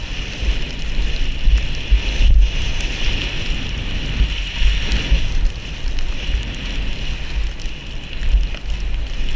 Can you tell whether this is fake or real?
real